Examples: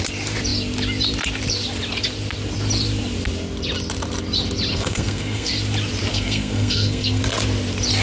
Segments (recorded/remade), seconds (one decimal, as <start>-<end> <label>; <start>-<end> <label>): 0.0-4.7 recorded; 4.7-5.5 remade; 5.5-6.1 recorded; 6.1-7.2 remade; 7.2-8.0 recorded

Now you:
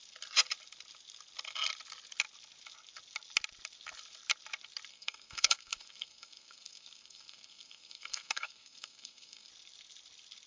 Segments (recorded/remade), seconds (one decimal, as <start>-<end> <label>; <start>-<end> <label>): 0.0-4.9 recorded; 4.9-9.5 remade; 9.5-10.5 recorded

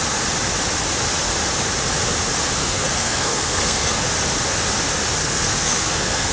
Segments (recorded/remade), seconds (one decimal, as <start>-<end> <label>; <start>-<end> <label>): 0.0-2.6 recorded; 2.6-4.1 remade; 4.1-5.2 recorded; 5.2-6.3 remade